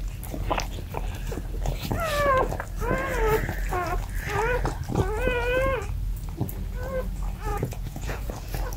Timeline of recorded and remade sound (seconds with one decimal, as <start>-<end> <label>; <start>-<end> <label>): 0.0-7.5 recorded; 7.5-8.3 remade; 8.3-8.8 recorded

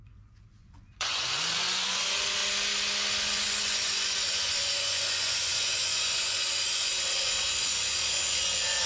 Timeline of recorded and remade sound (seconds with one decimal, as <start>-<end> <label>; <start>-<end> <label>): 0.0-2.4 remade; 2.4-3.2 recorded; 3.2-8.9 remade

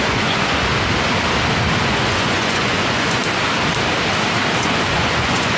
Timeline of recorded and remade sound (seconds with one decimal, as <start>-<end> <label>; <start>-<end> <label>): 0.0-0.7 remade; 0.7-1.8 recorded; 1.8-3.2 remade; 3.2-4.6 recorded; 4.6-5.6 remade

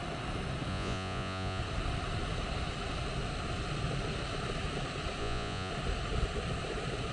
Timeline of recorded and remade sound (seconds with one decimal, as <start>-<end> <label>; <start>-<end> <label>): 0.0-0.7 recorded; 0.7-1.6 remade; 1.6-5.2 recorded; 5.2-5.7 remade; 5.7-7.1 recorded